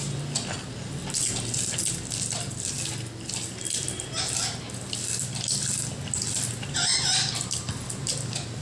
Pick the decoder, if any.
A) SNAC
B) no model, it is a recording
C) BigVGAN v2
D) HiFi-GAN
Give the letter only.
B